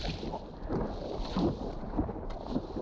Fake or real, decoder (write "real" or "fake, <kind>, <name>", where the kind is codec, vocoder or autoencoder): real